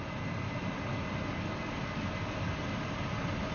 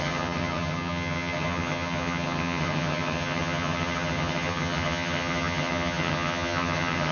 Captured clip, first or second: first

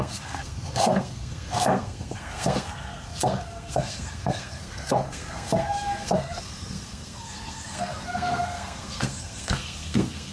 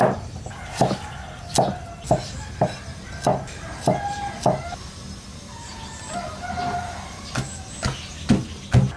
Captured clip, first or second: second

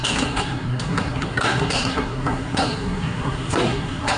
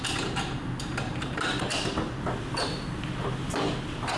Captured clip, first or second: second